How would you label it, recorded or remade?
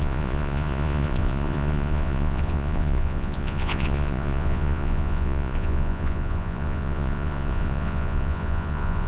remade